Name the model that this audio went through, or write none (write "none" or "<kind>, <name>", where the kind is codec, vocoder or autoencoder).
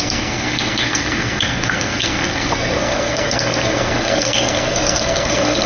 codec, SNAC